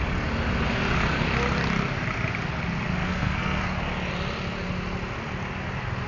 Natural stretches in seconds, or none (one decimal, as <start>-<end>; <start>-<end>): 0.0-3.0; 3.6-6.1